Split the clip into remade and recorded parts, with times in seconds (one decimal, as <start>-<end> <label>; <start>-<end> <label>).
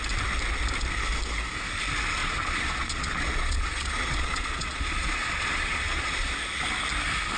0.0-2.2 recorded; 2.2-6.3 remade; 6.3-7.4 recorded